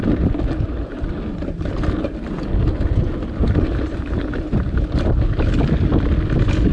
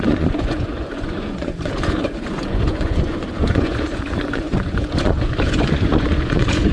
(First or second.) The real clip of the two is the first